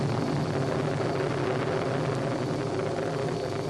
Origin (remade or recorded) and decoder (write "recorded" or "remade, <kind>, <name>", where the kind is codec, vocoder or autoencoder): recorded